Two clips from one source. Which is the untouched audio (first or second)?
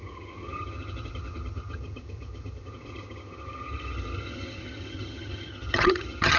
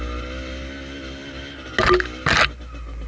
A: second